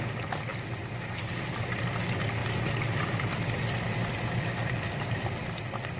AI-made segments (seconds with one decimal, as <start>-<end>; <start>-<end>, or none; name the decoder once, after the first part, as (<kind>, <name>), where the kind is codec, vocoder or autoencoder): none